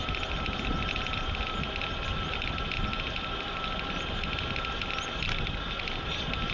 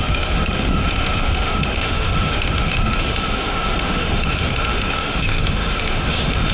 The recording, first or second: first